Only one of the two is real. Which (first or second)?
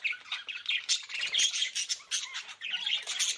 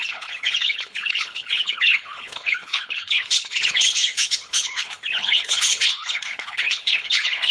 first